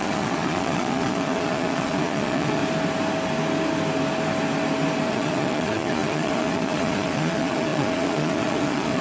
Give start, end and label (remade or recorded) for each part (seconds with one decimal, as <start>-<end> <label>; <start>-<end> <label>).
0.0-2.6 remade; 2.6-5.1 recorded; 5.1-9.0 remade